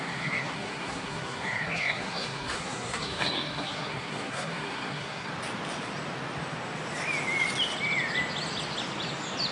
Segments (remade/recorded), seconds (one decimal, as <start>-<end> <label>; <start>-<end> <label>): 0.0-5.3 remade; 5.3-9.5 recorded